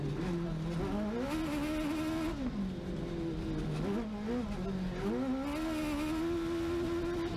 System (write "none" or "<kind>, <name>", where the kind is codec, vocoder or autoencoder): none